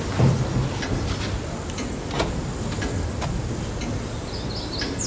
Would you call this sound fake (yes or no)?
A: no